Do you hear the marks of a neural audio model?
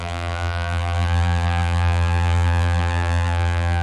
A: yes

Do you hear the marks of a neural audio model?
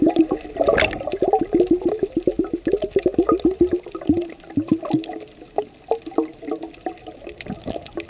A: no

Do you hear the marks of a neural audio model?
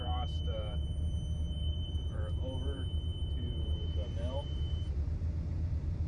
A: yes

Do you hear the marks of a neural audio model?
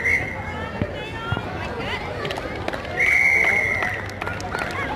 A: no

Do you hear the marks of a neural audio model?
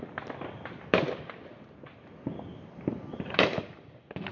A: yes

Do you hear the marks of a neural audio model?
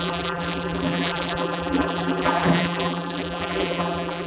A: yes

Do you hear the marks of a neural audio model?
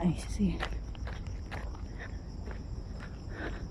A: no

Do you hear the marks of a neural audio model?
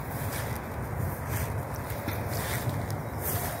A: no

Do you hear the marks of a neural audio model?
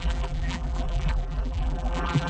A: yes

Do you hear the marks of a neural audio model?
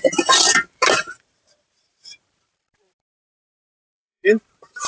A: yes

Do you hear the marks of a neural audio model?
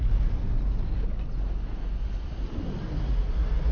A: no